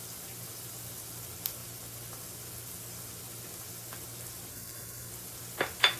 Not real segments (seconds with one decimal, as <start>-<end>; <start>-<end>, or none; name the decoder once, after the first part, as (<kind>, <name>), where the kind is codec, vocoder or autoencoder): 4.5-5.1 (codec, SNAC)